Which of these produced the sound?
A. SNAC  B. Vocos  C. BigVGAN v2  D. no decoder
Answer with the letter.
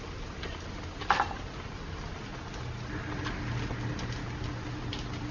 D